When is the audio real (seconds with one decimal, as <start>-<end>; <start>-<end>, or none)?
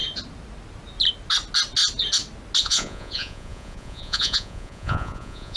0.0-2.6